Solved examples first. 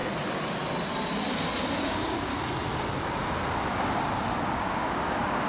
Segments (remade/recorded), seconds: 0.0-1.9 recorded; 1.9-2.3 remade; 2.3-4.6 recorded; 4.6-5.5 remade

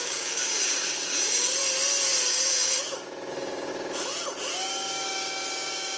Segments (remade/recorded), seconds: 0.0-1.6 remade; 1.6-2.3 recorded; 2.3-2.8 remade; 2.8-3.3 recorded; 3.3-3.7 remade; 3.7-4.5 recorded; 4.5-6.0 remade

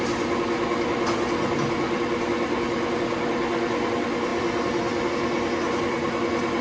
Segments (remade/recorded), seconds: 0.0-6.6 recorded

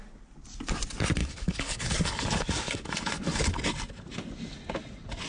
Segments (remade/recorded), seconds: 0.0-1.2 recorded; 1.2-3.1 remade; 3.1-5.3 recorded

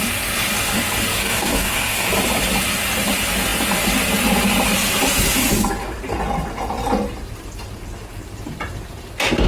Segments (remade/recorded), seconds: 0.0-1.2 recorded; 1.2-2.1 remade; 2.1-9.5 recorded

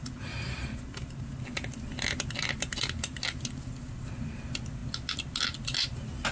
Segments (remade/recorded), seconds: 0.0-6.3 recorded

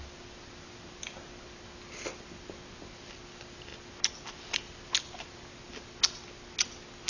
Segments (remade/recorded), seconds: 0.0-7.1 recorded